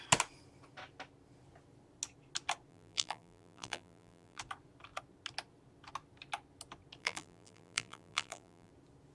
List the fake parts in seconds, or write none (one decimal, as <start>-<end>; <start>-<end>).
2.7-4.4; 7.0-8.7